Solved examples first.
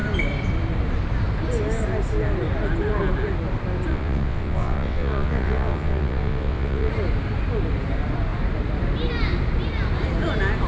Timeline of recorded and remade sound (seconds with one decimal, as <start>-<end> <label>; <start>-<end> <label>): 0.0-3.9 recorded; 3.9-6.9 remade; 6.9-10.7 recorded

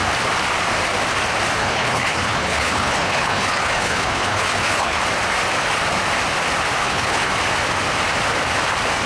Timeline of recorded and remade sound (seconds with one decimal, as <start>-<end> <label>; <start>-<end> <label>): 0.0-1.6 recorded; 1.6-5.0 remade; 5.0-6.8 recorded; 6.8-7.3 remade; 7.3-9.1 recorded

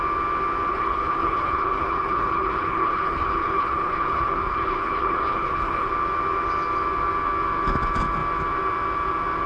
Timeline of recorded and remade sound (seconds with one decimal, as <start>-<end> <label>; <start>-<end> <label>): 0.0-0.7 recorded; 0.7-5.9 remade; 5.9-9.5 recorded

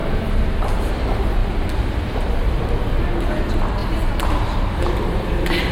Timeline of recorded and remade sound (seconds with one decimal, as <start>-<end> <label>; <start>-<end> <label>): 0.0-0.9 remade; 0.9-1.4 recorded; 1.4-2.6 remade; 2.6-3.8 recorded; 3.8-5.0 remade; 5.0-5.7 recorded

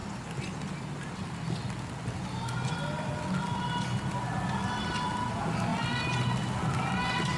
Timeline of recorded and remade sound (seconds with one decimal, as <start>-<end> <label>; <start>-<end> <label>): 0.0-7.4 recorded

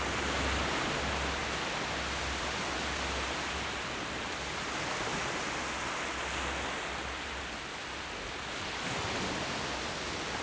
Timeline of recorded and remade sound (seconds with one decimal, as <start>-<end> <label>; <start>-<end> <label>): 0.0-10.4 recorded

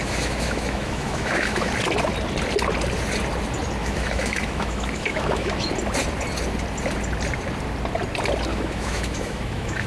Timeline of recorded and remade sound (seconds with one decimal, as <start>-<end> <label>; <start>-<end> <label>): 0.0-1.7 remade; 1.7-3.8 recorded; 3.8-5.7 remade; 5.7-8.5 recorded; 8.5-9.9 remade